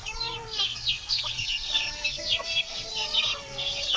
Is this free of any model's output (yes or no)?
no